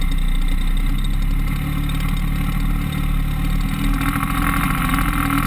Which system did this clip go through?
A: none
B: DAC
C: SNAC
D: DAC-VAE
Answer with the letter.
A